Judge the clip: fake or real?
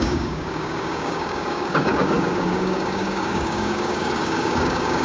fake